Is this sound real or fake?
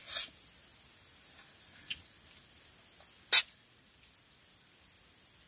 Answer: real